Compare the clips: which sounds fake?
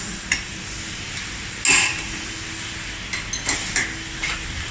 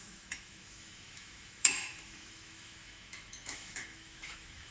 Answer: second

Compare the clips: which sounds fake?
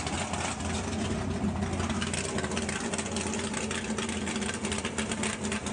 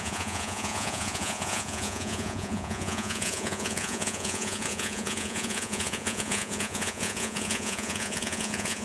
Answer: second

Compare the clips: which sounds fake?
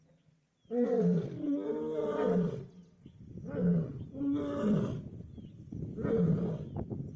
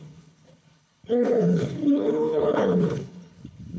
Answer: second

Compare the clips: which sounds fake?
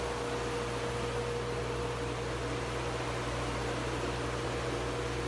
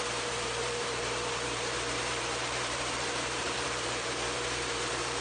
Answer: second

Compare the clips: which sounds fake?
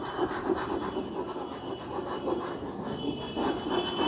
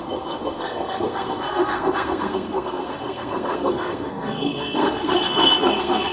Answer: second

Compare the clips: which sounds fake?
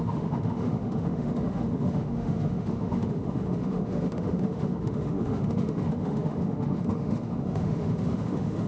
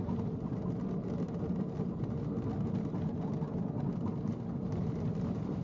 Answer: first